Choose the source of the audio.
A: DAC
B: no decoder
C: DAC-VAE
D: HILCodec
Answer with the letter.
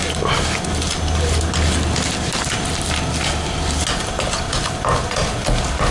B